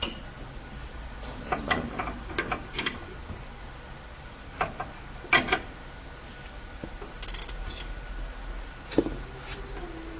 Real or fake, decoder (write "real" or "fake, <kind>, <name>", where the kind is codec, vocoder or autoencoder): real